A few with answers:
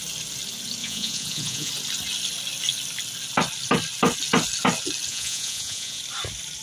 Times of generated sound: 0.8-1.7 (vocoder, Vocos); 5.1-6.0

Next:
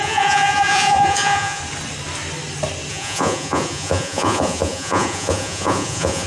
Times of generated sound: 0.0-1.6 (vocoder, Vocos); 2.9-6.3

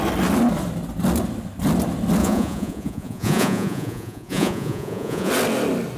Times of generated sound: 2.2-5.3 (vocoder, Vocos)

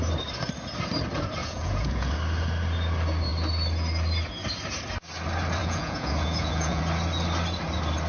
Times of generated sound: 1.4-2.1 (vocoder, Vocos); 5.6-6.8

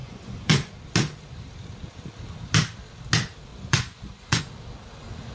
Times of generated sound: 0.0-0.7 (vocoder, Vocos); 3.5-4.4

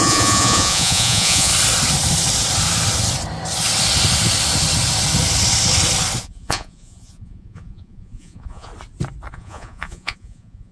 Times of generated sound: 0.0-1.5 (vocoder, Vocos); 6.2-8.7; 9.3-10.7